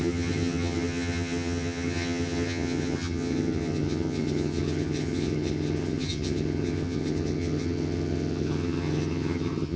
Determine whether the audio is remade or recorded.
remade